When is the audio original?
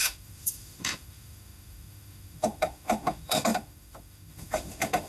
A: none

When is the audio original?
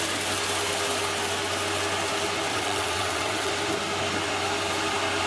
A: 0.0-2.5; 3.5-5.3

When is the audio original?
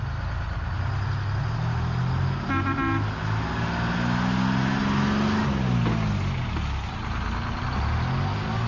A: 0.0-8.7